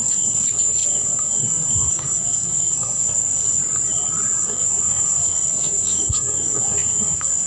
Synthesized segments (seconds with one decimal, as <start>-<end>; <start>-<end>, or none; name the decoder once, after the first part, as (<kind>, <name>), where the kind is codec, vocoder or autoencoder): 0.0-3.6 (codec, SNAC); 4.4-7.5